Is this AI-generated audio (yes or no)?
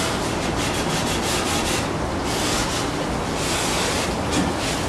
no